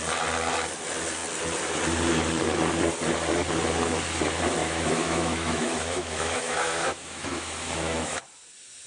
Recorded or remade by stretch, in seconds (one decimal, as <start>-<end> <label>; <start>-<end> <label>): 0.0-4.6 recorded; 4.6-8.2 remade; 8.2-8.9 recorded